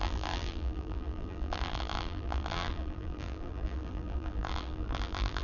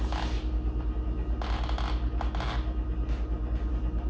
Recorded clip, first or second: second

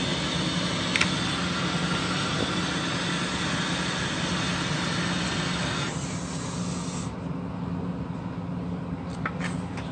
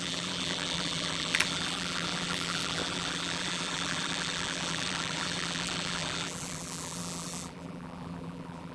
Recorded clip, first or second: first